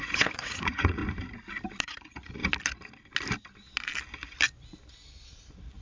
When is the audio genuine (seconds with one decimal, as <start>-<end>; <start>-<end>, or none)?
1.0-1.8; 2.4-5.8